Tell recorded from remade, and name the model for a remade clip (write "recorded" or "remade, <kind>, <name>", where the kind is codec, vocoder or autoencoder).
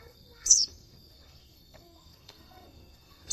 remade, codec, SNAC